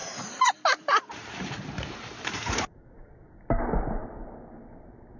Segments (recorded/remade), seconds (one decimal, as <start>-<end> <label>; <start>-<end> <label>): 0.0-3.1 remade; 3.1-5.2 recorded